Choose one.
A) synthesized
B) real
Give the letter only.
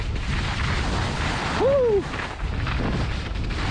B